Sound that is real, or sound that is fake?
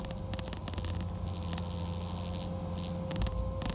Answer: real